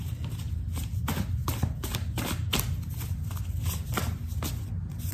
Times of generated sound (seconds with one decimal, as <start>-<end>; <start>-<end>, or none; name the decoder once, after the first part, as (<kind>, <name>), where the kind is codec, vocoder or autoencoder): none

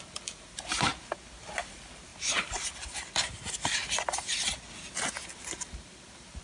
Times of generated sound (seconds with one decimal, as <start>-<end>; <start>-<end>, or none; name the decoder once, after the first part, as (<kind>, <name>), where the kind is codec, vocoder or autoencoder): 0.0-0.9 (vocoder, BigVGAN v2); 1.7-4.3; 5.2-6.4

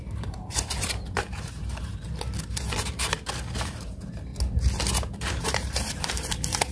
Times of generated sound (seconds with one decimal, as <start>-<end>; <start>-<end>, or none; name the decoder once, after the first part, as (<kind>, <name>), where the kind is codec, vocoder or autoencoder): 0.0-1.9 (vocoder, BigVGAN v2); 3.6-4.3; 5.3-6.7

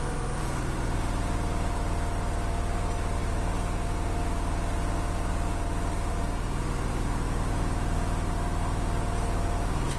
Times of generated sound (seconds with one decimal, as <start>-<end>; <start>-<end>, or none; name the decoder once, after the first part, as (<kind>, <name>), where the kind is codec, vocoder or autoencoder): 0.0-10.0 (vocoder, BigVGAN v2)

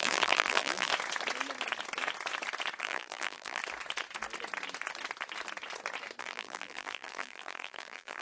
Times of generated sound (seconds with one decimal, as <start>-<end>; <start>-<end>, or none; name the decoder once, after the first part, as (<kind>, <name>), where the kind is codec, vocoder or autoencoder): 0.0-0.9 (vocoder, BigVGAN v2); 2.8-3.6; 6.2-8.2

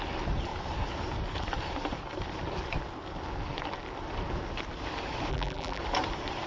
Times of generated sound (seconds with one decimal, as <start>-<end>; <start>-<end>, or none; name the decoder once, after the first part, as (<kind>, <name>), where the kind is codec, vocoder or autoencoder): 5.3-5.8 (vocoder, BigVGAN v2)

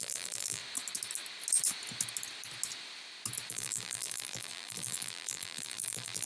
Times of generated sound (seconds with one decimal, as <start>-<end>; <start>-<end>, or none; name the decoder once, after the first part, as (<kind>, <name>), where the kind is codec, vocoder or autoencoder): 0.0-0.6 (vocoder, BigVGAN v2); 3.5-6.3

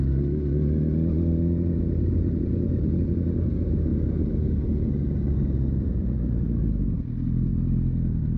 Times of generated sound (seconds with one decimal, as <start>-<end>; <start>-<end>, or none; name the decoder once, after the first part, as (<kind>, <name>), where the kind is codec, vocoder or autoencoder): none